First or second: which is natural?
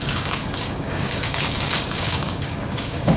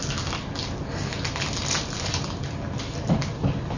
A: second